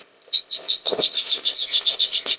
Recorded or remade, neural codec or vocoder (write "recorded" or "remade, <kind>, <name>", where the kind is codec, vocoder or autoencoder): remade, codec, ZipCodec